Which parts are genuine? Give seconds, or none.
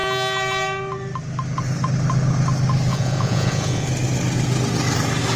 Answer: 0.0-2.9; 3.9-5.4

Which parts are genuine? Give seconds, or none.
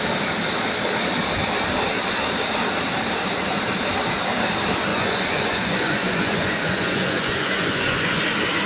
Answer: 0.0-4.9; 8.2-8.7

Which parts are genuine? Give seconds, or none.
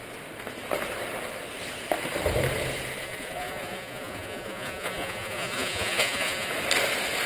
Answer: 0.0-3.0; 6.5-7.3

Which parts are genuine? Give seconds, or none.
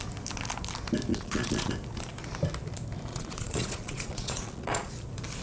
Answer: 0.0-1.1; 1.7-3.1; 4.9-5.4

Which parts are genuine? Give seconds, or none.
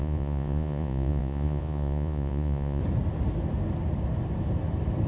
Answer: 2.8-5.1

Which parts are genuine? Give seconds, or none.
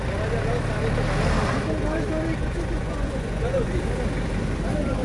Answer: 0.0-2.4; 3.8-5.0